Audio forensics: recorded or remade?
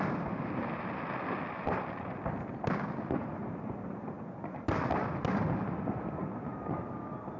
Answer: recorded